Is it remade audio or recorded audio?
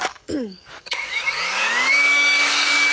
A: remade